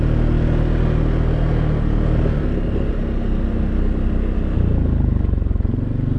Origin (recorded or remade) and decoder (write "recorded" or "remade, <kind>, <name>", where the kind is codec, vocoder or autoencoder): recorded